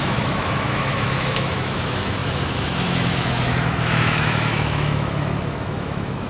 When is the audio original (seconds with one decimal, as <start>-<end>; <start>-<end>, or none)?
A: none

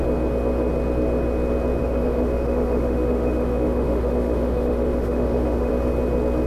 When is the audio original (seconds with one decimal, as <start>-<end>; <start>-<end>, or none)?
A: 0.0-1.8; 5.7-6.5

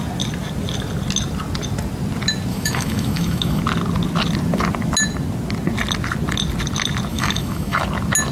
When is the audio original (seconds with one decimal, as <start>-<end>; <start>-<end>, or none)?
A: 0.0-2.5; 3.6-7.1; 7.8-8.3

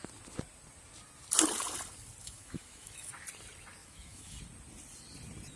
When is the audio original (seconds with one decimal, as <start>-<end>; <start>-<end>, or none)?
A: 0.0-2.2; 3.1-3.8; 4.4-5.6

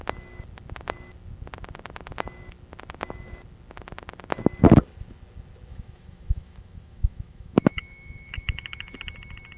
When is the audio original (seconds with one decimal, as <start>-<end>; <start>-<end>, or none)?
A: 0.0-5.7; 9.0-9.6